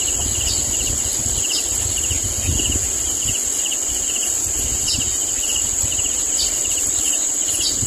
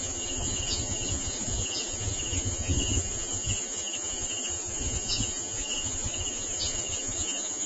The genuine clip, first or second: first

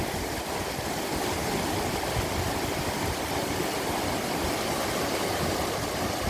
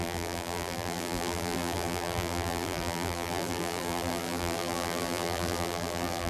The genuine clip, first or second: first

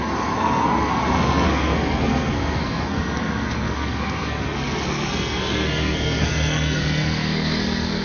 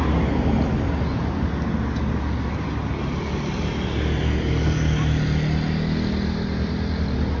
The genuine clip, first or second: second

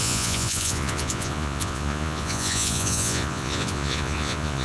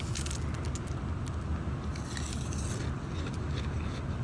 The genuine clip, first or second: second